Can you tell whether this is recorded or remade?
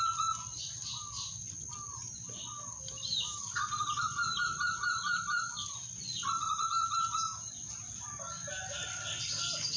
recorded